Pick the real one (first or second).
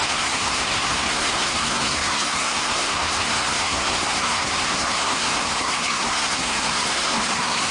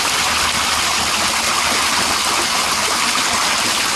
second